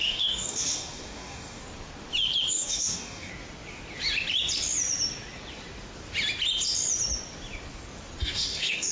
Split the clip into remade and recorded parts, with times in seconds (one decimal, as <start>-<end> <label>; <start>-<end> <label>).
0.0-1.6 remade; 1.6-2.5 recorded; 2.5-3.3 remade; 3.3-8.2 recorded; 8.2-8.9 remade